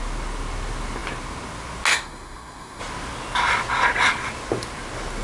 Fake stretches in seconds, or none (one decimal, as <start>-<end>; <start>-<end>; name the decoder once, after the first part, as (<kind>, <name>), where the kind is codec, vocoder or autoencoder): 1.9-2.8 (codec, SNAC)